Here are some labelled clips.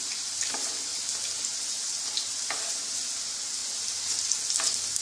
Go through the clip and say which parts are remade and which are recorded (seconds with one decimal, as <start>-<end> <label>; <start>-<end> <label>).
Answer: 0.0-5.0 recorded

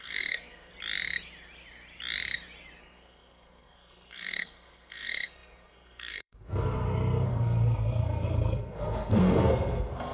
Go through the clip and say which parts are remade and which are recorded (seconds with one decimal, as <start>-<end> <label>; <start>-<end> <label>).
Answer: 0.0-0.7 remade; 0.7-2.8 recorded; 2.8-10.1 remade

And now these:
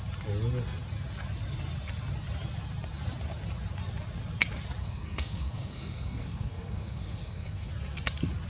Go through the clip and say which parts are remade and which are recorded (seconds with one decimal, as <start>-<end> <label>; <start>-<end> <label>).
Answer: 0.0-4.8 recorded; 4.8-7.7 remade; 7.7-8.5 recorded

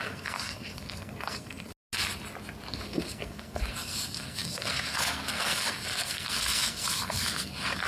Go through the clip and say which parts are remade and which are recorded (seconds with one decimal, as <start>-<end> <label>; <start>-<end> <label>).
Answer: 0.0-1.7 remade; 1.7-2.7 recorded; 2.7-7.9 remade